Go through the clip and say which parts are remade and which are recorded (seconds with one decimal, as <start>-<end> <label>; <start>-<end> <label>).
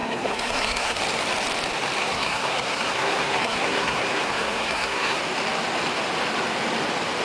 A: 0.0-1.0 remade; 1.0-2.0 recorded; 2.0-5.2 remade; 5.2-7.2 recorded